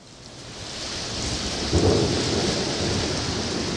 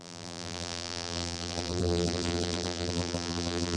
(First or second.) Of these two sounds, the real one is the first